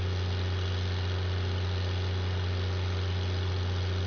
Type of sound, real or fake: real